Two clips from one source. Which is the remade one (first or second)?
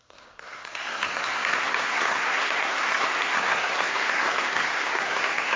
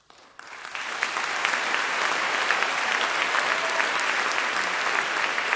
first